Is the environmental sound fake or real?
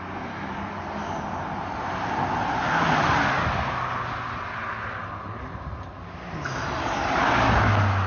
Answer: real